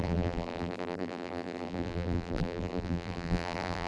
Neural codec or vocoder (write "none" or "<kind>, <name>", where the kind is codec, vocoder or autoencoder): vocoder, BigVGAN v2